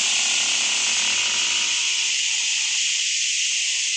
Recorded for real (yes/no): yes